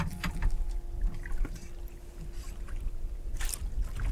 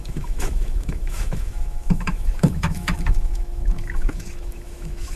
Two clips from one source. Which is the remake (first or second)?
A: second